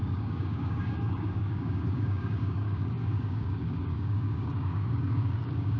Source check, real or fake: fake